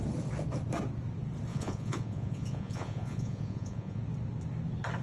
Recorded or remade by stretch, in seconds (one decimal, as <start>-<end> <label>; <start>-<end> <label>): 0.0-1.5 recorded; 1.5-4.0 remade; 4.0-5.0 recorded